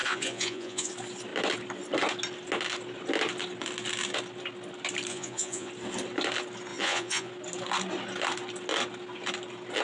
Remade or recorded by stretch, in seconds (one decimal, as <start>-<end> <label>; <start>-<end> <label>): 0.0-0.9 remade; 0.9-5.1 recorded; 5.1-5.7 remade; 5.7-6.7 recorded; 6.7-7.3 remade; 7.3-9.8 recorded